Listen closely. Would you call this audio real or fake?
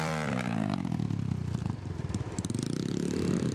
fake